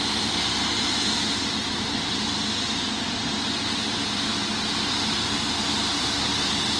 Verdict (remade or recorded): recorded